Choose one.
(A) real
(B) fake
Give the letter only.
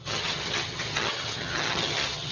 B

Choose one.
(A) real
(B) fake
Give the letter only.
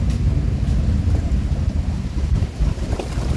A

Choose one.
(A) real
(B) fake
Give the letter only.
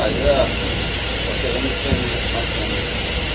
A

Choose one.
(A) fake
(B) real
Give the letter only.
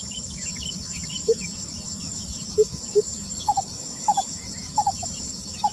A